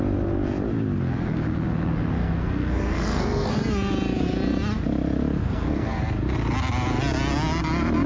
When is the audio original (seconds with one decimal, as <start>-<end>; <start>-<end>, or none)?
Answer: 0.0-2.2; 3.5-5.4; 6.0-8.1